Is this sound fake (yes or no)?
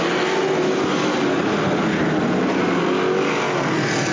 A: no